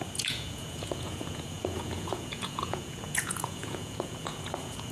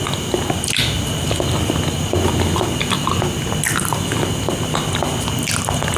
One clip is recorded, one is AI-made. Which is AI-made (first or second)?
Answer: first